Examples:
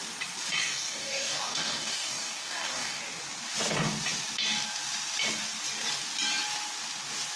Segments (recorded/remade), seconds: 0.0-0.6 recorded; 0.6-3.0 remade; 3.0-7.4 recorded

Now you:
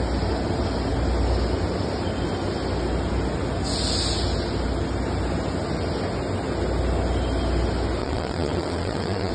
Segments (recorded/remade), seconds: 0.0-8.0 recorded; 8.0-9.3 remade

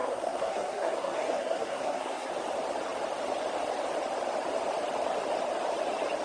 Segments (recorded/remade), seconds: 0.0-2.3 remade; 2.3-6.2 recorded

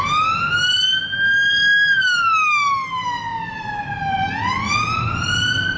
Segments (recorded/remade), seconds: 0.0-5.8 recorded

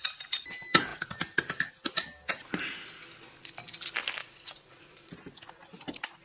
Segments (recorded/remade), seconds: 0.0-4.2 recorded; 4.2-5.1 remade; 5.1-6.2 recorded

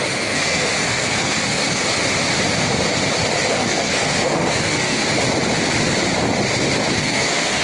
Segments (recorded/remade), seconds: 0.0-1.8 remade; 1.8-3.5 recorded; 3.5-5.0 remade; 5.0-7.0 recorded; 7.0-7.6 remade

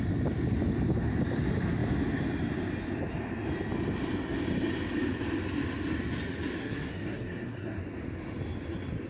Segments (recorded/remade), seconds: 0.0-6.6 recorded; 6.6-7.8 remade; 7.8-9.1 recorded